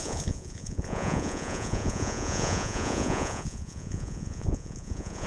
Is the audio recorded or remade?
remade